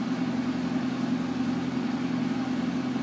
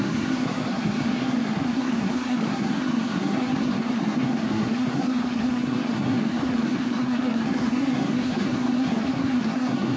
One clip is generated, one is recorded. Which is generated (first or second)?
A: second